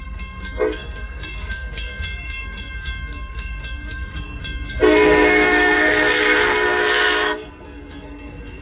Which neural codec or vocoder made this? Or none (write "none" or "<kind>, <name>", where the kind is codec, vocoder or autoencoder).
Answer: codec, SNAC